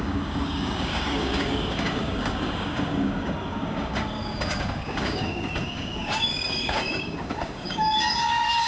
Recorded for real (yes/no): no